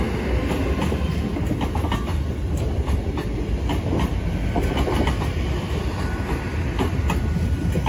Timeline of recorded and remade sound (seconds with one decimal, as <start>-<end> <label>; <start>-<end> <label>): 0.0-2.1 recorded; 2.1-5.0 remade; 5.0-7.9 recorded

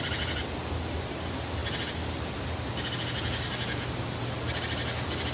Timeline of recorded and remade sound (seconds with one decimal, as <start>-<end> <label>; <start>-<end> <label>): 0.0-5.3 recorded

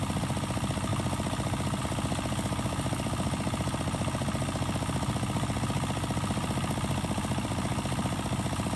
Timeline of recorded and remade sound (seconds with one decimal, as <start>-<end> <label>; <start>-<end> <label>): 0.0-8.8 recorded

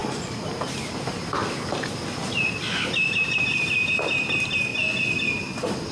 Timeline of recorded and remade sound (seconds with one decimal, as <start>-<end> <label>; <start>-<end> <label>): 0.0-0.5 recorded; 0.5-1.4 remade; 1.4-3.2 recorded; 3.2-4.7 remade; 4.7-5.3 recorded; 5.3-5.9 remade

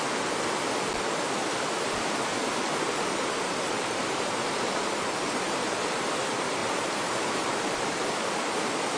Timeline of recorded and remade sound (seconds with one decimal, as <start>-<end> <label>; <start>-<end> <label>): 0.0-2.3 recorded; 2.3-6.1 remade; 6.1-6.6 recorded; 6.6-8.1 remade; 8.1-9.0 recorded

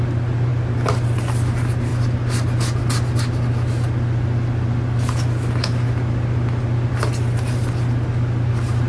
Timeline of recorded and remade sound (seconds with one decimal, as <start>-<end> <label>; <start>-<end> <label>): 0.0-8.9 recorded